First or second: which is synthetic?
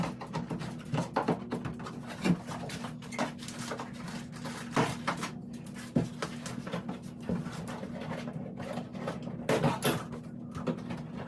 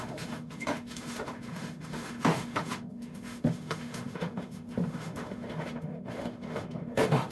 second